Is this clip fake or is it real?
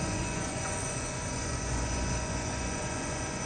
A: fake